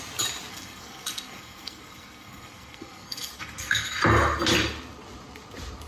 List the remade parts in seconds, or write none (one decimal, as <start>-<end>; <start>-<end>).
0.5-4.0